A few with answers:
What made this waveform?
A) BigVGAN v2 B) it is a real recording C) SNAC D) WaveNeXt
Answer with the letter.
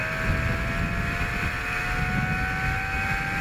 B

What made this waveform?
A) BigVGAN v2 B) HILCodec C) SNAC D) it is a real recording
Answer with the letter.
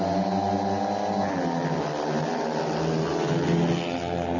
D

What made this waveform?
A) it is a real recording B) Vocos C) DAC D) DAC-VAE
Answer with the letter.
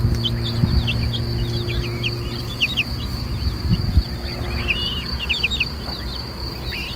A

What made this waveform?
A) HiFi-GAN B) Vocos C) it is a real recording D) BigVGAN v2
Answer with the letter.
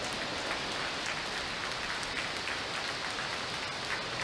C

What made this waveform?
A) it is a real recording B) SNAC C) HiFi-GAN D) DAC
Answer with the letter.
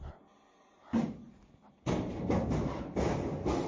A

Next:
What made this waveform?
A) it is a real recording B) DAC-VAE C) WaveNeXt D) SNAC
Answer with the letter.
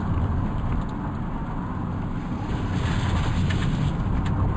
A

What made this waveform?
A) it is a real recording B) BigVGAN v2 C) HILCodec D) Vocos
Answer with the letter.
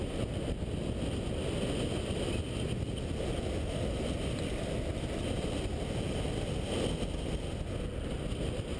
A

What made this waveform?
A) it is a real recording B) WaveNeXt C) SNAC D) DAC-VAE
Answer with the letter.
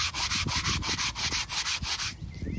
A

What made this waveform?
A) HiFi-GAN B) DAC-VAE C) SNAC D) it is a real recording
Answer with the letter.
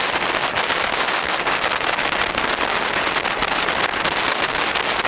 D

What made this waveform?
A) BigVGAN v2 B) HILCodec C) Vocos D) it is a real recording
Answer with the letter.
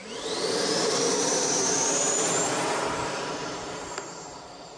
A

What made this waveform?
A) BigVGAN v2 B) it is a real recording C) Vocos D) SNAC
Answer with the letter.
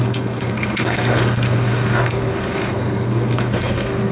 D